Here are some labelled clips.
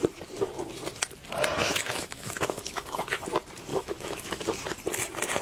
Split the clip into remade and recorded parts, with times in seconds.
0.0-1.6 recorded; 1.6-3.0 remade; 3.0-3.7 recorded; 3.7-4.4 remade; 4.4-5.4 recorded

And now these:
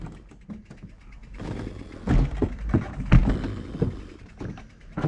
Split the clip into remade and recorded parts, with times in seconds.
0.0-5.1 recorded

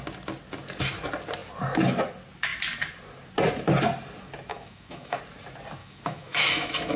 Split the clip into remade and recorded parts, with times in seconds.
0.0-4.5 recorded; 4.5-5.2 remade; 5.2-5.8 recorded; 5.8-7.0 remade

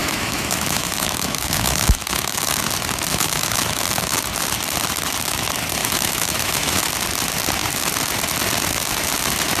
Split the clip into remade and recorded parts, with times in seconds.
0.0-2.6 remade; 2.6-3.1 recorded; 3.1-4.2 remade; 4.2-5.8 recorded; 5.8-6.8 remade; 6.8-9.6 recorded